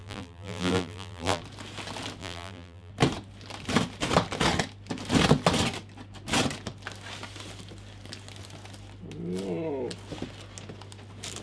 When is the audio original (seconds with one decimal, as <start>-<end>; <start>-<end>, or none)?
1.4-2.2; 2.9-11.4